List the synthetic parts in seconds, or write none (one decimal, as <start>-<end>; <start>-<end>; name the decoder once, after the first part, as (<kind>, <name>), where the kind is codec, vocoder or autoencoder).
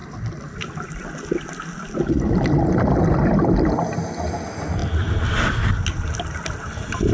none